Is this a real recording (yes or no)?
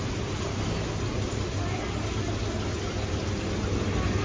yes